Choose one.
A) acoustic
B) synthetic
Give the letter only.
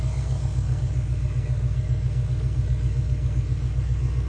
B